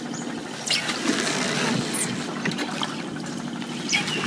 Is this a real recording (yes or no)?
yes